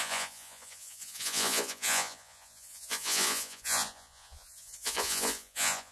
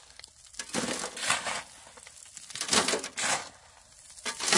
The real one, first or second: second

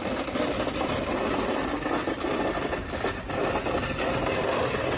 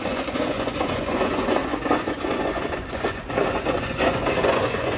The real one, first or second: first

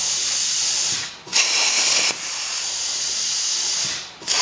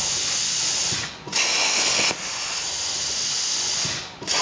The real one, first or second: first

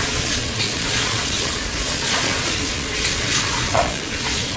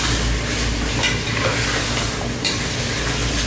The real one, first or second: second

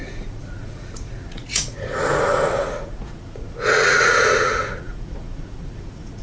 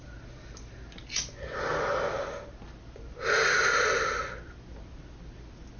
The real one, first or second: second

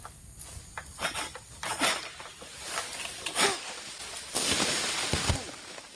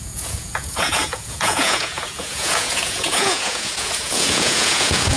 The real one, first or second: first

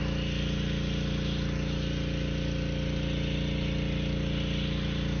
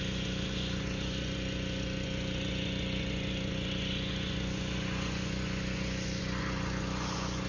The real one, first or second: first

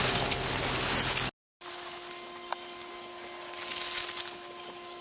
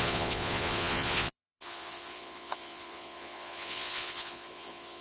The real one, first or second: first